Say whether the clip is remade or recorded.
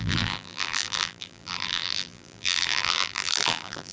remade